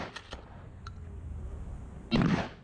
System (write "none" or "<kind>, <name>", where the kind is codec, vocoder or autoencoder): none